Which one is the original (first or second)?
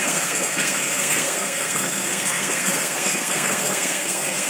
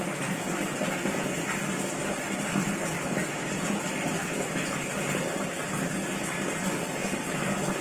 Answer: second